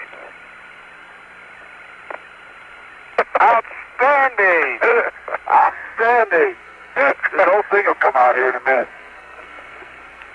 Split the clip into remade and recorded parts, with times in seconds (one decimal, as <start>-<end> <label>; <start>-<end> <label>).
0.0-5.6 recorded; 5.6-7.1 remade; 7.1-7.7 recorded; 7.7-10.3 remade